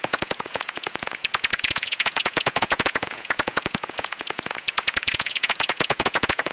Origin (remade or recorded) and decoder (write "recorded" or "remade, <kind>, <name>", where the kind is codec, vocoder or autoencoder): remade, vocoder, Vocos